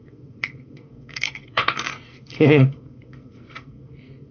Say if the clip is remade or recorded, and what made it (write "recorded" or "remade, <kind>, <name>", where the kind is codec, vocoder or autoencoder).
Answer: remade, codec, SNAC